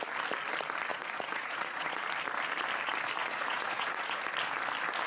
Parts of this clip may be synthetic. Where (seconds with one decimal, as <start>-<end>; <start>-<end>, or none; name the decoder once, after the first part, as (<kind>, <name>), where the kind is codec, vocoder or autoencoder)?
0.9-2.0 (vocoder, Vocos); 3.2-4.3